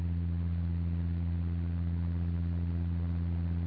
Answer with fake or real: real